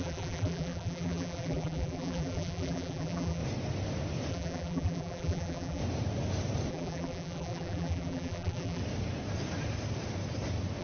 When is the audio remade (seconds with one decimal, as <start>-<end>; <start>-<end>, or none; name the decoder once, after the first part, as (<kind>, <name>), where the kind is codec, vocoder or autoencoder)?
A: 0.0-3.4 (vocoder, BigVGAN v2); 4.3-5.8; 6.7-8.8